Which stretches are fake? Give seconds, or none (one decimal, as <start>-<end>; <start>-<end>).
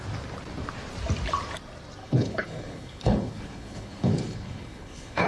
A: 2.0-5.3